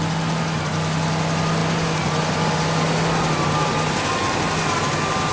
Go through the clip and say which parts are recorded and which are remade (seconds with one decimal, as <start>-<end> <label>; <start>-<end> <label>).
0.0-5.3 recorded